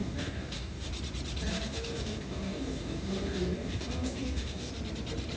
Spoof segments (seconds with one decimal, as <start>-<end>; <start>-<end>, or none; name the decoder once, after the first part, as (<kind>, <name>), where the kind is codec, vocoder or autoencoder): 0.0-0.9 (codec, DAC); 1.5-4.7